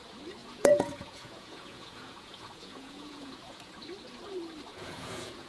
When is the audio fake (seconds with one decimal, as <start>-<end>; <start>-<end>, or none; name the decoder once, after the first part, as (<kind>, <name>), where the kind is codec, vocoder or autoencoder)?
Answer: 0.4-3.7 (vocoder, Vocos); 4.7-5.5